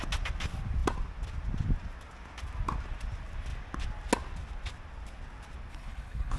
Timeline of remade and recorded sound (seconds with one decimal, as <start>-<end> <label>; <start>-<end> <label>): 0.0-5.7 recorded; 5.7-6.4 remade